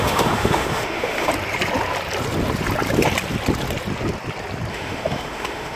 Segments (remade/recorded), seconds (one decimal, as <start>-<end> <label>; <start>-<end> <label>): 0.0-1.3 remade; 1.3-4.7 recorded; 4.7-5.8 remade